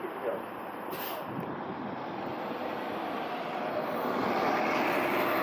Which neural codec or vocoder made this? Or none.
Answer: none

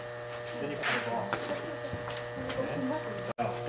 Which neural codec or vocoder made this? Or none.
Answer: none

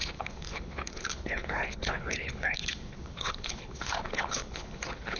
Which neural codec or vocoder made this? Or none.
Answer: codec, HILCodec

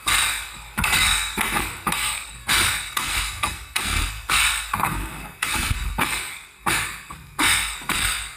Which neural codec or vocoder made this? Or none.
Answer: codec, SNAC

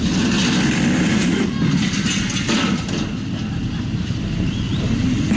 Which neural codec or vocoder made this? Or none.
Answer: none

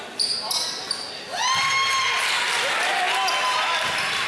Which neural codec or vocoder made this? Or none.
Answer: none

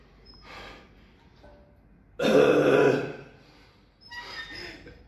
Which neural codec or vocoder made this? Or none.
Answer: none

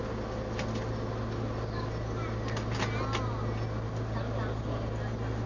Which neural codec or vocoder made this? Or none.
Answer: none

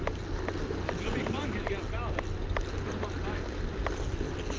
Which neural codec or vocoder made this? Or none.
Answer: none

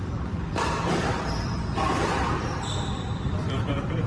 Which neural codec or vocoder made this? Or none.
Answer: vocoder, BigVGAN v2